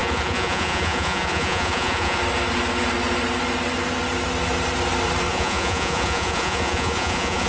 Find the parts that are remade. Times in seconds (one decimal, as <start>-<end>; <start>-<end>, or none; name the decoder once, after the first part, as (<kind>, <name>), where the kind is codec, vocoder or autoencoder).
0.0-2.2 (vocoder, Vocos); 5.3-7.5